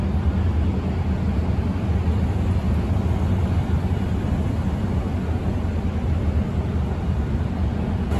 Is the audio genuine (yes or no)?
yes